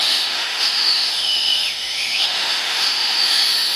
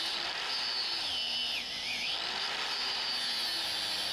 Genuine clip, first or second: second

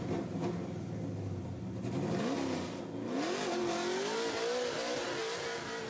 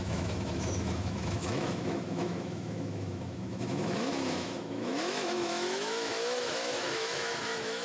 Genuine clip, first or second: first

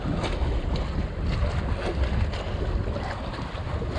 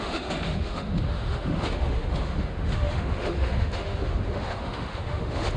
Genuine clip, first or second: first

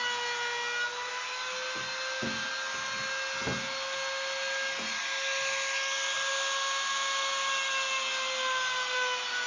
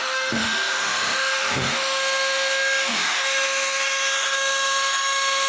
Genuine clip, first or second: first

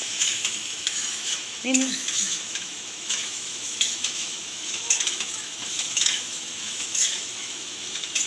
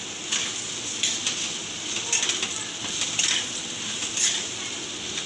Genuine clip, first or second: second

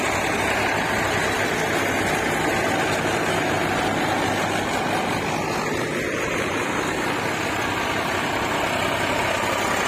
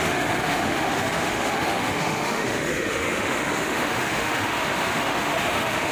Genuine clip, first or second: first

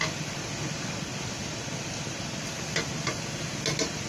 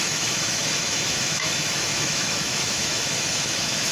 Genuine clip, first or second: first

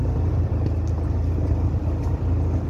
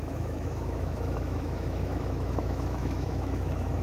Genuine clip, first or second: first